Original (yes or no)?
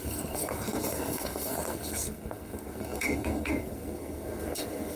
no